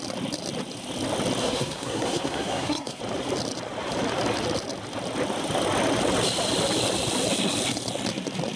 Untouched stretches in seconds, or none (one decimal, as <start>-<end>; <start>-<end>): 0.0-1.4; 3.0-8.6